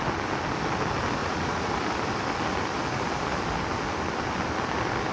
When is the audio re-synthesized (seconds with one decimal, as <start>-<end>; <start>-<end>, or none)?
1.2-1.7